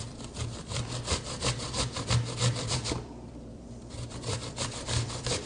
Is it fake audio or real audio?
fake